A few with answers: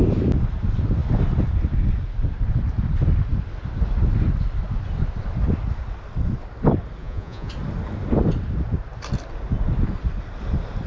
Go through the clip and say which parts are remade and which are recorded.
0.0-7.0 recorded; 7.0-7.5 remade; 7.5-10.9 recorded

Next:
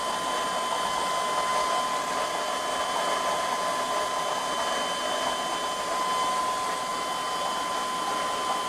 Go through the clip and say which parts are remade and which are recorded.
0.0-8.7 recorded

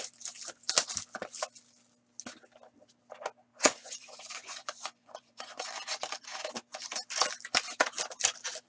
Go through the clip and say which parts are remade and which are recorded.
0.0-3.5 recorded; 3.5-5.7 remade; 5.7-8.7 recorded

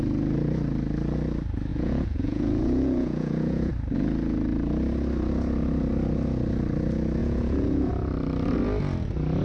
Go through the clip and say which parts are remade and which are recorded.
0.0-1.7 recorded; 1.7-3.7 remade; 3.7-7.2 recorded; 7.2-7.9 remade; 7.9-9.4 recorded